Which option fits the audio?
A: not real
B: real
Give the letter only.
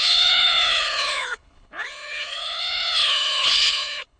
A